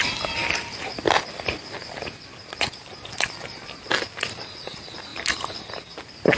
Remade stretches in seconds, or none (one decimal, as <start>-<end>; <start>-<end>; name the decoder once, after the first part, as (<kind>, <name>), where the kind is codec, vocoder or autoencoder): none